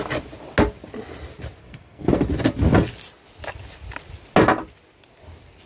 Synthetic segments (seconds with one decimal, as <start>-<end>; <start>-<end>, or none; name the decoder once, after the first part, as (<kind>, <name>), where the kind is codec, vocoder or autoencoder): 1.6-2.3 (codec, SNAC)